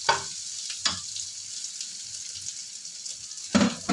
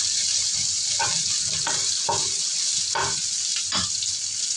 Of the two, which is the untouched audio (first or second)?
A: first